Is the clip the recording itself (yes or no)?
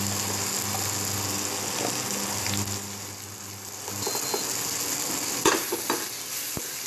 yes